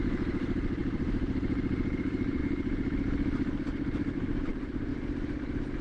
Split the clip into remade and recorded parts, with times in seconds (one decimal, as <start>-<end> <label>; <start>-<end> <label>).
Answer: 0.0-2.4 remade; 2.4-4.1 recorded; 4.1-4.9 remade; 4.9-5.8 recorded